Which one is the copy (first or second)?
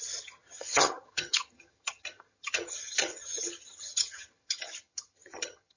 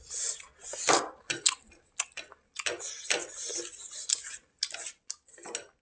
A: first